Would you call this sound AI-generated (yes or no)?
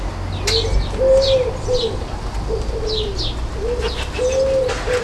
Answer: no